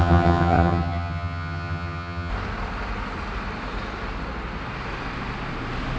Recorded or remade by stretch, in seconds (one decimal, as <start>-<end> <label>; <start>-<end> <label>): 0.0-2.3 remade; 2.3-6.0 recorded